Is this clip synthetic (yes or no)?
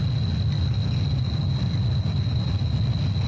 no